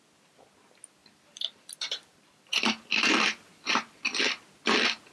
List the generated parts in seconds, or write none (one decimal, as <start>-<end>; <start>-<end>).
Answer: 1.0-4.0